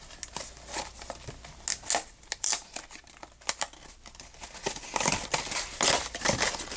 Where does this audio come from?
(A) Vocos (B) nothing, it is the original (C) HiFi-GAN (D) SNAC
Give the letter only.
B